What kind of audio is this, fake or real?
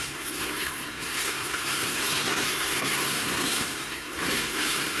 fake